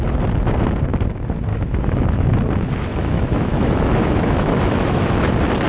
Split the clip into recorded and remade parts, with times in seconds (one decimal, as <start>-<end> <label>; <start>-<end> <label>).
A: 0.0-1.5 recorded; 1.5-2.3 remade; 2.3-2.9 recorded; 2.9-5.3 remade; 5.3-5.7 recorded